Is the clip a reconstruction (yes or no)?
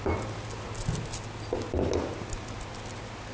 no